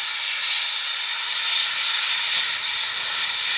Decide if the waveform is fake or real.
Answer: real